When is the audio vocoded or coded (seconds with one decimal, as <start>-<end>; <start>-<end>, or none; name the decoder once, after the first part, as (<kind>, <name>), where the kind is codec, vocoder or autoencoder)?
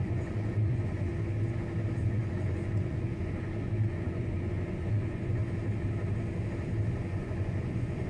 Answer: 0.0-1.1 (vocoder, Vocos); 2.0-5.4; 7.0-8.1